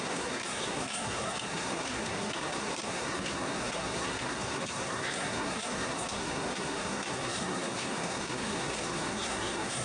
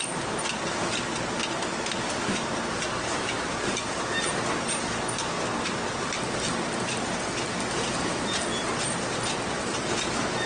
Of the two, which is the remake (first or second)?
first